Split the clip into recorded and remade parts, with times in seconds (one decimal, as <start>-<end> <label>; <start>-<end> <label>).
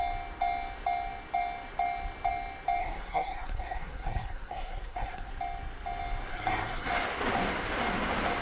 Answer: 0.0-2.8 recorded; 2.8-5.3 remade; 5.3-6.3 recorded; 6.3-6.9 remade; 6.9-8.4 recorded